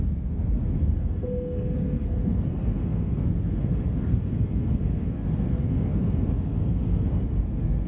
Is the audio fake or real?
fake